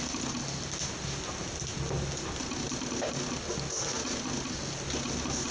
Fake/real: real